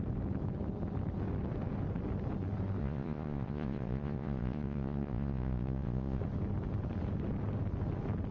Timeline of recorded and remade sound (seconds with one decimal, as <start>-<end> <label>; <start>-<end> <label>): 0.0-2.8 recorded; 2.8-6.2 remade; 6.2-8.3 recorded